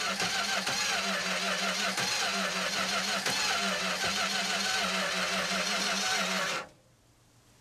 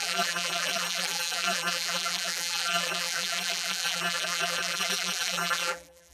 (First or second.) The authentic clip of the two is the first